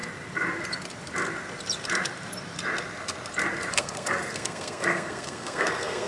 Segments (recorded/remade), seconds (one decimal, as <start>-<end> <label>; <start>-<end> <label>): 0.0-3.7 recorded; 3.7-6.1 remade